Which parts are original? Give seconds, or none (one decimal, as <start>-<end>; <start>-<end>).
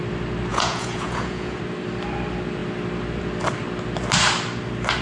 0.0-0.5; 1.6-5.0